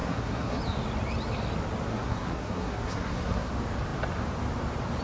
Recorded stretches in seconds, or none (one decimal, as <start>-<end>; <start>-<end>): 0.6-1.9; 3.5-5.0